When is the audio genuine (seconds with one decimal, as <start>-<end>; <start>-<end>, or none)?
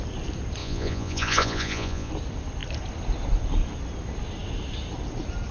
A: 0.0-0.6; 2.1-5.5